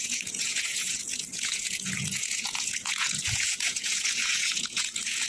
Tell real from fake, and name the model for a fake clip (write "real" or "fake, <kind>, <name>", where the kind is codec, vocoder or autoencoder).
fake, vocoder, Vocos